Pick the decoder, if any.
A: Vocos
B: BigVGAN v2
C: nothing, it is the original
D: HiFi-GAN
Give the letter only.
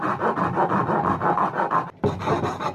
C